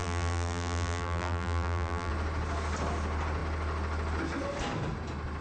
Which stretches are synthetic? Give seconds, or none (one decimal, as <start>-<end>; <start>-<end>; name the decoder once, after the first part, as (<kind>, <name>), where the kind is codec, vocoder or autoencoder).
0.0-2.1 (vocoder, BigVGAN v2)